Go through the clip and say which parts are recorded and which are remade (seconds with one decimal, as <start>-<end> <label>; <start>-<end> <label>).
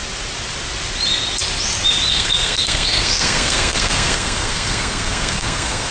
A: 0.0-2.1 recorded; 2.1-5.9 remade